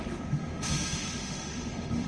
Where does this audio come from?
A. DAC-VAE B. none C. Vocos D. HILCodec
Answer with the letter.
A